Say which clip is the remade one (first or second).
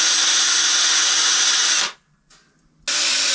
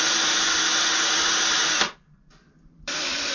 second